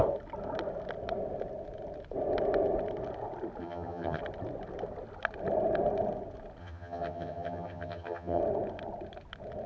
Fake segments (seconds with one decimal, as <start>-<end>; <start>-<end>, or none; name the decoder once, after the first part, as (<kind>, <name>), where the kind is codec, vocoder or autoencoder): 3.6-4.2 (vocoder, HiFi-GAN); 6.6-8.4

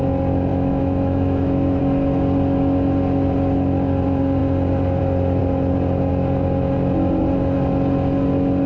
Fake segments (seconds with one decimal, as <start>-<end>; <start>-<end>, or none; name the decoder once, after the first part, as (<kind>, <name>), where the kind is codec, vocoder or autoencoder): 0.5-1.8 (autoencoder, DAC-VAE)

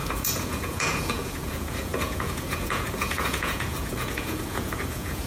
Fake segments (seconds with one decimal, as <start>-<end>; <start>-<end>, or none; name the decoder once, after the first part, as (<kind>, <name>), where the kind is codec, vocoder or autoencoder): 0.0-5.3 (vocoder, Vocos)

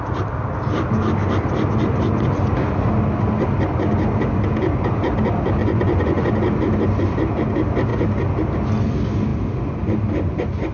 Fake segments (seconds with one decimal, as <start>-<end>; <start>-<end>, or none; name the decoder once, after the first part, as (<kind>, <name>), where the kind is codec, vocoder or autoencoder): 5.6-6.3 (vocoder, Vocos)